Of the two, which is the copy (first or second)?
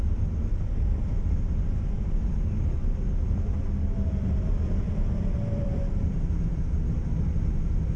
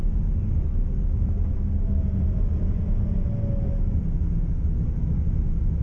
first